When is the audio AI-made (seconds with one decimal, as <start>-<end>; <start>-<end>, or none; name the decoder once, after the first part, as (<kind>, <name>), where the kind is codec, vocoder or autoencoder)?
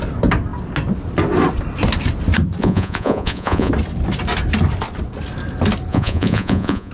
2.6-3.7 (vocoder, Vocos); 5.9-6.9